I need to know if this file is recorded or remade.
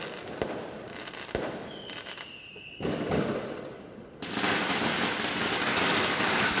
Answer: recorded